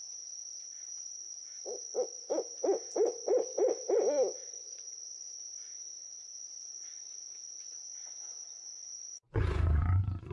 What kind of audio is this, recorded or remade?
remade